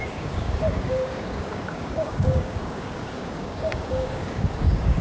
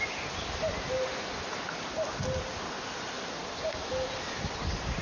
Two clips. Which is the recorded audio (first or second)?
second